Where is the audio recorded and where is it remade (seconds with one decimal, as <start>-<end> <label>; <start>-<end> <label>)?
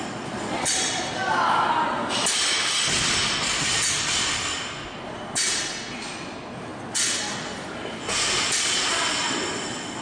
0.0-1.2 remade; 1.2-5.3 recorded; 5.3-6.7 remade; 6.7-8.0 recorded; 8.0-10.0 remade